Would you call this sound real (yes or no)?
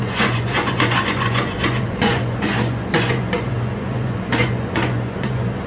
no